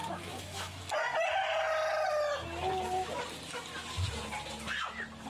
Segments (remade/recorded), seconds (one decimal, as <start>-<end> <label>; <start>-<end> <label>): 0.0-0.8 remade; 0.8-5.3 recorded